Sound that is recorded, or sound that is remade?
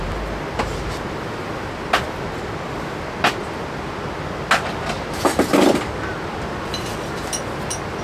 recorded